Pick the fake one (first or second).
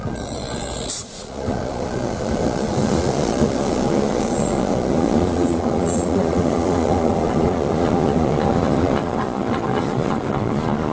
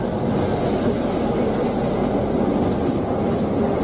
first